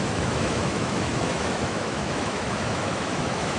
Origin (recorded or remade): remade